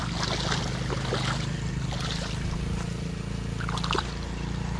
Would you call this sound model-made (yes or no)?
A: no